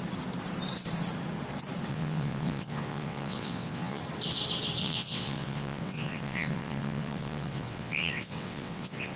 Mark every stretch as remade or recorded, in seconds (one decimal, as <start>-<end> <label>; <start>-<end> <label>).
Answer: 0.0-1.9 recorded; 1.9-4.0 remade; 4.0-4.8 recorded; 4.8-9.2 remade